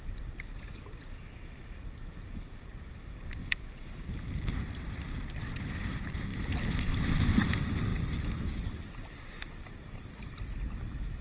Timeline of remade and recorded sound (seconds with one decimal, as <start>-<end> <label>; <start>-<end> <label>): 0.0-3.4 remade; 3.4-4.7 recorded; 4.7-11.2 remade